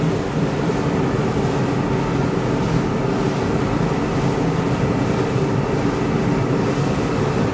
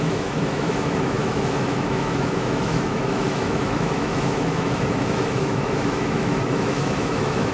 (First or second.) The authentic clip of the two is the first